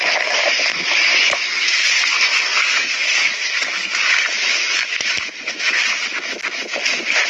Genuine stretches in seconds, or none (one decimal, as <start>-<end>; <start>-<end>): 0.0-0.7; 1.9-2.7